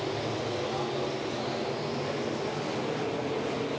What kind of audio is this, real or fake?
real